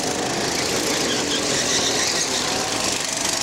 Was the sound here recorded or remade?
recorded